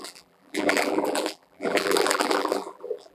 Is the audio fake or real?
fake